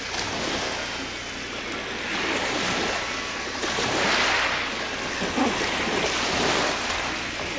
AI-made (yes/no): no